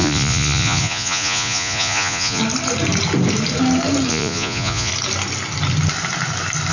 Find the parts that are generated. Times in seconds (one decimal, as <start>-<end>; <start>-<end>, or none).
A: 0.0-2.4; 4.1-4.9